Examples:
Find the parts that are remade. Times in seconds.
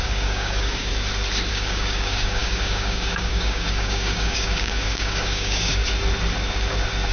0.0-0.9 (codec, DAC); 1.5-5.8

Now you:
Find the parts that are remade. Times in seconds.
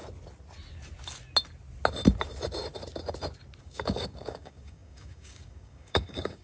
3.6-6.4 (codec, DAC)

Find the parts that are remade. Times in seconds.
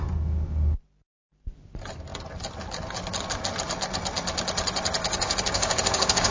5.0-6.3 (codec, DAC)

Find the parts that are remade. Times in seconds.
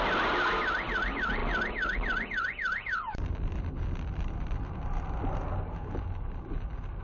none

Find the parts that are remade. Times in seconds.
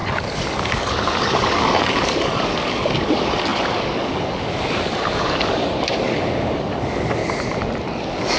0.6-7.2 (codec, DAC); 8.0-8.4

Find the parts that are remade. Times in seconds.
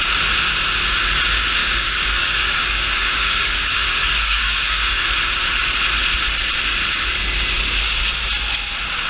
1.6-5.1 (codec, DAC)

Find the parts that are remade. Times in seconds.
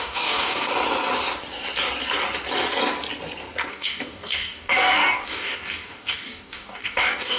0.0-0.7 (codec, DAC); 3.7-7.4